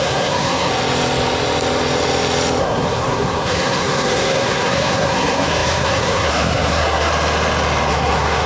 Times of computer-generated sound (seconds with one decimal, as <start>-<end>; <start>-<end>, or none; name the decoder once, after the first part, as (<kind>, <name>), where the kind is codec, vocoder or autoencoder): 0.0-0.7 (codec, SNAC); 2.6-7.1; 7.9-8.5